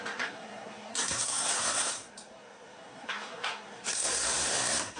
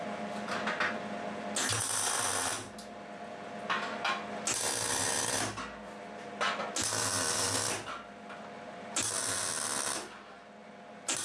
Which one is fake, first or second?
first